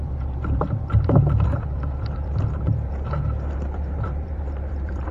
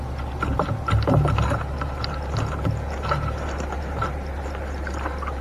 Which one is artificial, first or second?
first